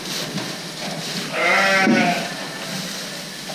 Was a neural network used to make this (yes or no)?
no